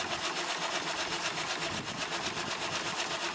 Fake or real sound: real